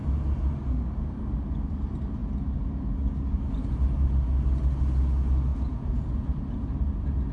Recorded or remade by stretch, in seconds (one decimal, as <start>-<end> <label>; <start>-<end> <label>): 0.0-5.5 recorded; 5.5-6.4 remade; 6.4-7.3 recorded

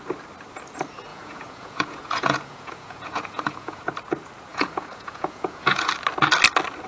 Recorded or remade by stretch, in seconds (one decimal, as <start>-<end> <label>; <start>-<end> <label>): 0.0-1.1 recorded; 1.1-3.8 remade; 3.8-4.5 recorded; 4.5-5.9 remade; 5.9-6.9 recorded

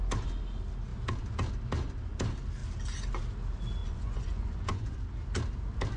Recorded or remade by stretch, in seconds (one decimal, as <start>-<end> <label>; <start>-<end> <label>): 0.0-3.8 recorded; 3.8-5.0 remade; 5.0-6.0 recorded

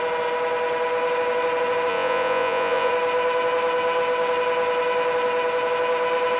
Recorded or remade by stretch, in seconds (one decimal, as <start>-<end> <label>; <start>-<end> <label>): 0.0-1.9 recorded; 1.9-2.9 remade; 2.9-6.4 recorded